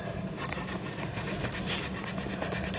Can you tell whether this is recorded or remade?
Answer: recorded